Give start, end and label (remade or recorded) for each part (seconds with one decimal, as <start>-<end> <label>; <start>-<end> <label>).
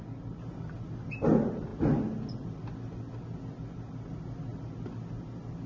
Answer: 0.0-5.7 recorded